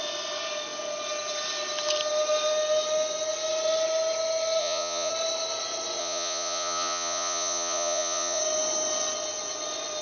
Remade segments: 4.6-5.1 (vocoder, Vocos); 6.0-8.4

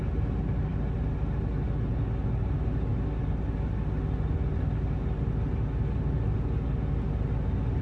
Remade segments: none